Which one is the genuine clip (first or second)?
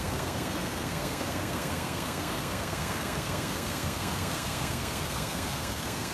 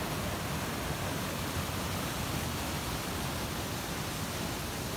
second